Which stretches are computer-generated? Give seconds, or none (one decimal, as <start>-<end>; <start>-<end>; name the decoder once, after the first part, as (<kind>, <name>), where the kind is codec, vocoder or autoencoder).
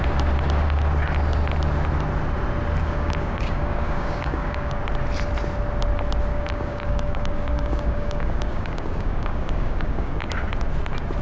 2.8-4.8 (codec, DAC); 6.3-10.3